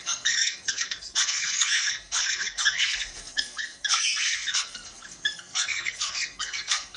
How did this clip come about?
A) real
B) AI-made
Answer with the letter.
B